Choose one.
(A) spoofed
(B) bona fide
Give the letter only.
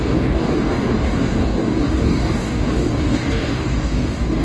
A